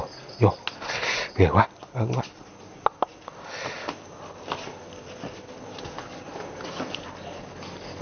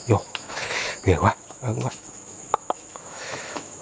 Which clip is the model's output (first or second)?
second